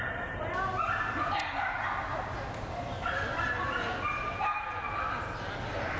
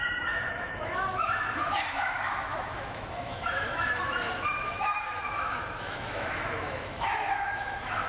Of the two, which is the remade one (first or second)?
second